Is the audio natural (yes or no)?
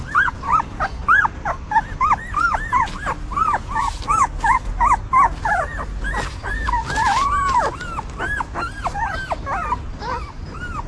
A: yes